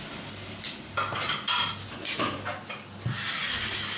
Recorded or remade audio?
recorded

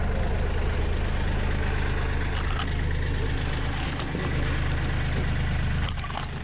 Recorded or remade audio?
recorded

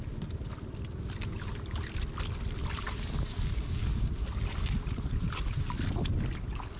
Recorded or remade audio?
recorded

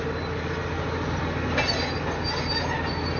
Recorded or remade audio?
recorded